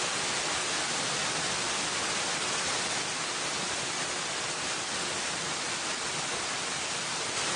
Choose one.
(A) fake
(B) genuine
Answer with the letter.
B